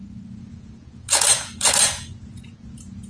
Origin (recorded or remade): remade